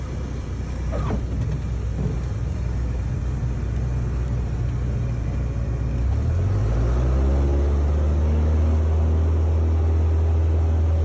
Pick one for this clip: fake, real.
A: real